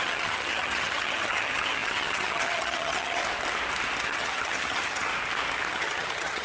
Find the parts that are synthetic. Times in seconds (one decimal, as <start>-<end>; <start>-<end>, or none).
0.0-3.2; 4.0-5.1; 5.7-6.4